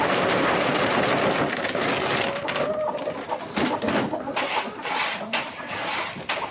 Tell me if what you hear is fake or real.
real